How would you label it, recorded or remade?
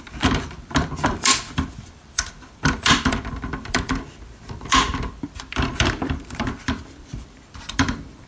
remade